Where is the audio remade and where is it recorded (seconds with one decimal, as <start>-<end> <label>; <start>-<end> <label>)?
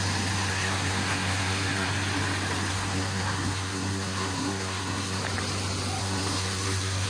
0.0-0.5 recorded; 0.5-1.9 remade; 1.9-2.7 recorded; 2.7-5.2 remade; 5.2-6.0 recorded; 6.0-7.1 remade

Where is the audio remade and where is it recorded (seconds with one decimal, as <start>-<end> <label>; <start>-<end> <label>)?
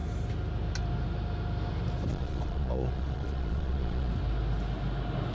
0.0-2.1 recorded; 2.1-4.1 remade; 4.1-5.3 recorded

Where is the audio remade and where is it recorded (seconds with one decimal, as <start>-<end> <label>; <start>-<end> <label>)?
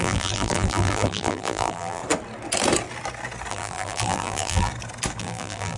0.0-2.0 remade; 2.0-3.5 recorded; 3.5-4.7 remade; 4.7-5.2 recorded; 5.2-5.8 remade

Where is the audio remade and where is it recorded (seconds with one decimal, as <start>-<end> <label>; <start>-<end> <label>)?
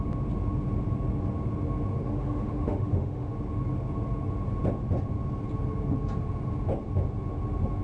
0.0-2.0 recorded; 2.0-3.3 remade; 3.3-7.8 recorded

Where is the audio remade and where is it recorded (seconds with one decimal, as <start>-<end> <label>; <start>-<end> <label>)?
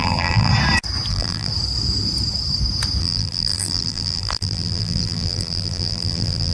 0.0-0.5 remade; 0.5-1.1 recorded; 1.1-1.5 remade; 1.5-3.0 recorded; 3.0-6.5 remade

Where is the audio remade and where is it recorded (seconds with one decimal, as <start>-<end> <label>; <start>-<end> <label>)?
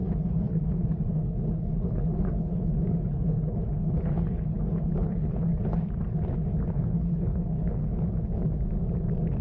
0.0-5.5 remade; 5.5-6.7 recorded; 6.7-7.8 remade; 7.8-9.4 recorded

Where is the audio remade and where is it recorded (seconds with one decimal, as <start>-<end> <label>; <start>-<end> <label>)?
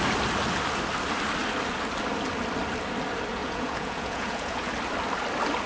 0.0-3.4 recorded; 3.4-4.7 remade; 4.7-5.7 recorded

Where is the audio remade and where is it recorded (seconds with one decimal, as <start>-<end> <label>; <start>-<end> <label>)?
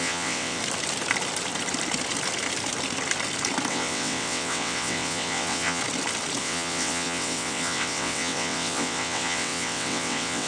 0.0-0.6 remade; 0.6-3.7 recorded; 3.7-5.8 remade; 5.8-6.4 recorded; 6.4-10.5 remade